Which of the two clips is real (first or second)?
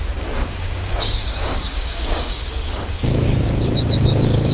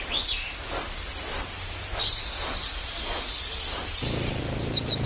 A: second